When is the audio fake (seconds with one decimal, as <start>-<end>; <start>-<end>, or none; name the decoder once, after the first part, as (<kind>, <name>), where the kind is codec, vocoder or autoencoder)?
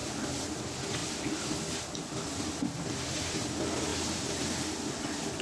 none